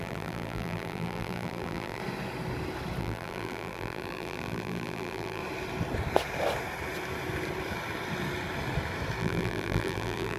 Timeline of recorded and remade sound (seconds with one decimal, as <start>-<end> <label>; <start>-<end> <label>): 0.0-2.0 remade; 2.0-3.0 recorded; 3.0-5.4 remade; 5.4-9.2 recorded; 9.2-10.4 remade